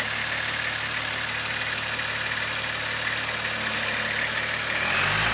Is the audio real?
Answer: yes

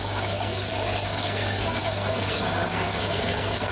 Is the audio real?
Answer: no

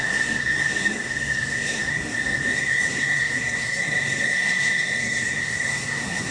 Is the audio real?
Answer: no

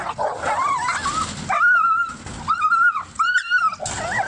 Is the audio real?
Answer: yes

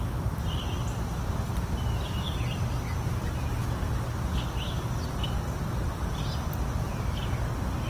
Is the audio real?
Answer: yes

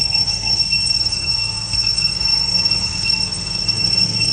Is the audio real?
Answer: no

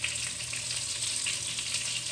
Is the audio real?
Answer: yes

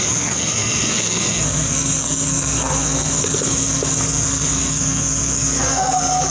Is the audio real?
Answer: no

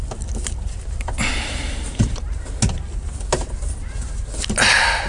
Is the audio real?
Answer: yes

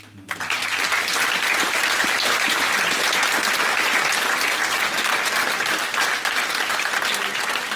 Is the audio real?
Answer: yes